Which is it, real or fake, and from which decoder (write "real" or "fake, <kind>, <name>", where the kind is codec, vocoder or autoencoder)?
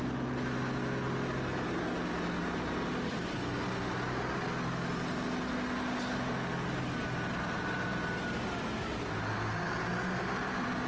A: real